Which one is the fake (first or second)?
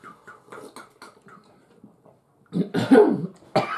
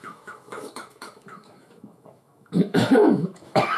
second